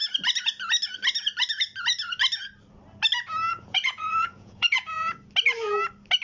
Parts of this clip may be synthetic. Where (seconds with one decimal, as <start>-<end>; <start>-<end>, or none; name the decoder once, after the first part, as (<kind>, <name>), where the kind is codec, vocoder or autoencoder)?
3.5-5.1 (vocoder, Vocos)